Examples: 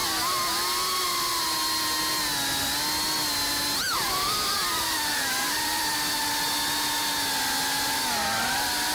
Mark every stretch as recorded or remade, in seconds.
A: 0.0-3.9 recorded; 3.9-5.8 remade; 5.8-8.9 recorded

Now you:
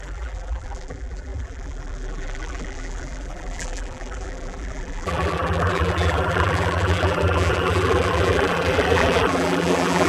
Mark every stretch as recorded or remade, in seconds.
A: 0.0-10.1 remade

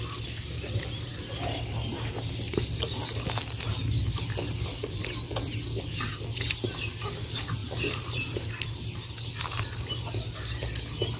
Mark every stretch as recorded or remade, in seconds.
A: 0.0-7.6 recorded; 7.6-8.5 remade; 8.5-11.2 recorded

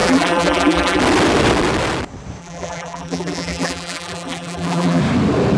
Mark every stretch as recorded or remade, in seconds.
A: 0.0-1.0 remade; 1.0-2.4 recorded; 2.4-5.0 remade; 5.0-5.6 recorded

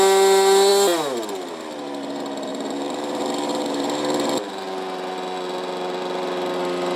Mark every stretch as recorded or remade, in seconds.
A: 0.0-2.5 recorded; 2.5-4.6 remade; 4.6-7.0 recorded

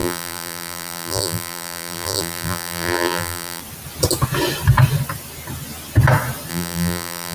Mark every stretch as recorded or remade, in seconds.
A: 0.0-3.6 remade; 3.6-6.5 recorded; 6.5-7.3 remade

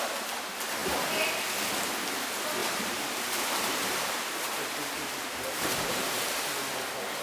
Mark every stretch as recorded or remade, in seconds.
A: 0.0-2.6 recorded; 2.6-6.2 remade; 6.2-7.2 recorded